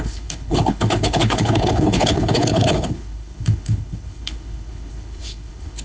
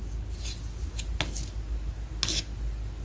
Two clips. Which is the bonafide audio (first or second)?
second